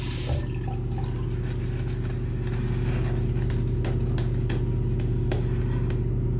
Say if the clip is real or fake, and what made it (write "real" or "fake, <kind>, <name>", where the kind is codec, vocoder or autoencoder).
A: real